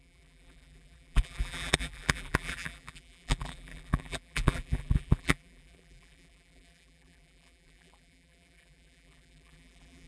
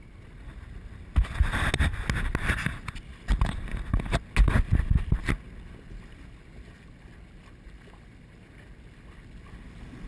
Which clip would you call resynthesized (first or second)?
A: first